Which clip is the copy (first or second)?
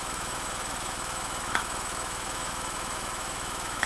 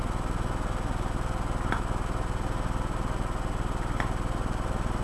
first